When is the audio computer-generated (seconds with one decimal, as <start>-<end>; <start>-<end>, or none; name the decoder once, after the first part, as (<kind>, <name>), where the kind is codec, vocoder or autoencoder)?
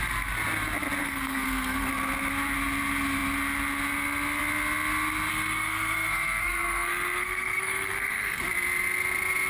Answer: 1.0-1.9 (codec, SNAC); 5.3-8.4